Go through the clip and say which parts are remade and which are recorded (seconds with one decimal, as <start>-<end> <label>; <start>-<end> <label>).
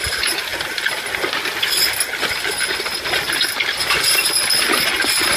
0.0-5.4 recorded